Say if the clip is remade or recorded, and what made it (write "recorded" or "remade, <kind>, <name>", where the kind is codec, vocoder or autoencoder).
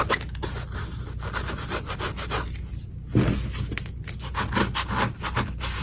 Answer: recorded